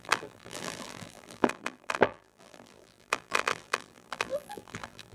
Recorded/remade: remade